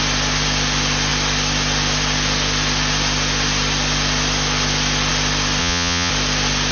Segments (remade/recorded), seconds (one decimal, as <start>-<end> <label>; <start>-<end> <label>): 0.0-5.6 recorded; 5.6-6.1 remade; 6.1-6.7 recorded